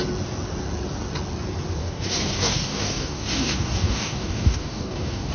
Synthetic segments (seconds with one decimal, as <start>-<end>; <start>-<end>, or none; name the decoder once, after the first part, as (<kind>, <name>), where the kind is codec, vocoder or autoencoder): 1.8-5.3 (codec, DAC)